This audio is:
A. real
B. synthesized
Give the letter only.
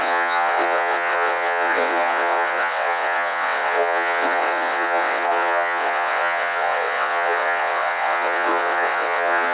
B